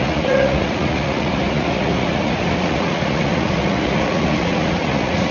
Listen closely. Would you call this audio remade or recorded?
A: remade